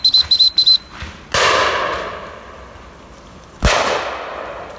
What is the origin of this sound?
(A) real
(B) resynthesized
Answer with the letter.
A